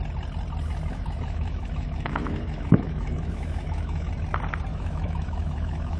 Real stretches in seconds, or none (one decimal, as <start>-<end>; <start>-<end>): 0.0-0.9; 4.1-4.7